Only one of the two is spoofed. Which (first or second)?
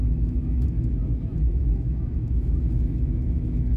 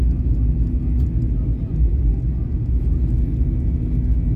first